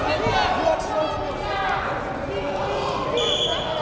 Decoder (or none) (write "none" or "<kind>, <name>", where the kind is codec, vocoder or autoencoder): none